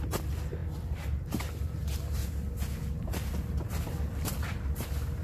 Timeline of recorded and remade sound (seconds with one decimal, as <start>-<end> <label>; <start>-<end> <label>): 0.0-2.2 remade; 2.2-3.1 recorded; 3.1-5.2 remade